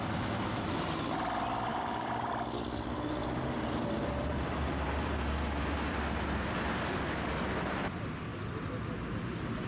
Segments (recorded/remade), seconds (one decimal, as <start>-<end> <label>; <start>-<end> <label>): 0.0-1.7 recorded; 1.7-2.3 remade; 2.3-9.7 recorded